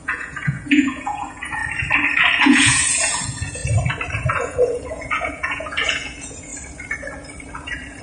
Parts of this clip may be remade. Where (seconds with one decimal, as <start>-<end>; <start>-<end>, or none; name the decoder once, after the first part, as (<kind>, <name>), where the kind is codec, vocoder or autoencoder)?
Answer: 0.0-1.6 (vocoder, Vocos); 2.4-3.6; 4.3-6.5